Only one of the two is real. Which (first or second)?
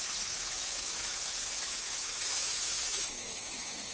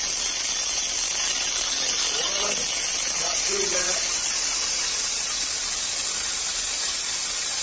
second